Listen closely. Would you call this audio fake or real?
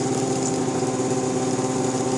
real